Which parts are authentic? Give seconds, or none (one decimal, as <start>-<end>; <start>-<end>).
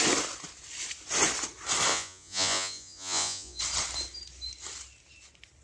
0.0-1.9; 3.6-5.6